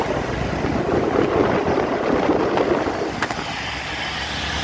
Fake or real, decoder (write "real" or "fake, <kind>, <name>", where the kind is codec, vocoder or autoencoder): real